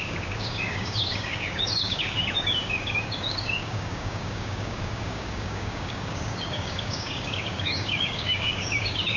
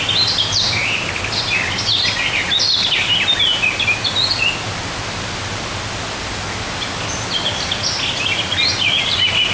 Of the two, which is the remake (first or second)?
first